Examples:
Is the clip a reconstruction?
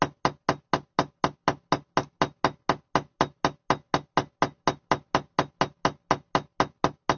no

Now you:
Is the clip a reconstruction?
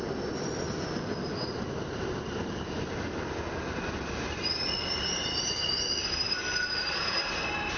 no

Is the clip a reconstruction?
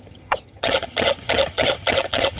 yes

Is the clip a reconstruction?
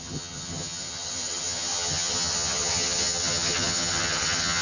yes